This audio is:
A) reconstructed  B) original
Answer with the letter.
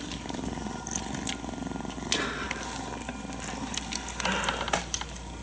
B